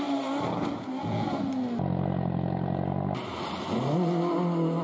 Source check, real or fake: real